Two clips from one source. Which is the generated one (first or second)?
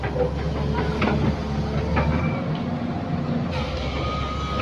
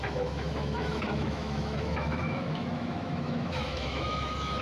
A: second